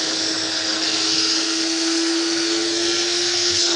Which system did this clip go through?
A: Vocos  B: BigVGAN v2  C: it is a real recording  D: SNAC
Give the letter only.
D